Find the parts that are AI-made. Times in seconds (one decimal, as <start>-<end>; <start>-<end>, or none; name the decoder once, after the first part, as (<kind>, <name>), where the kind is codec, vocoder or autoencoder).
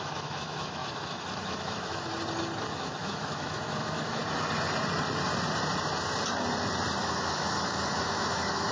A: 0.0-2.1 (autoencoder, DAC-VAE); 2.7-4.2; 7.0-8.7